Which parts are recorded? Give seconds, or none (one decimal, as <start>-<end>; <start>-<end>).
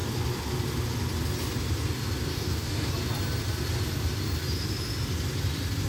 0.0-2.3; 2.9-5.9